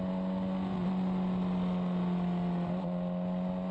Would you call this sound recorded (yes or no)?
yes